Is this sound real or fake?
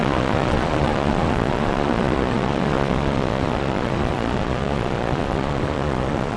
fake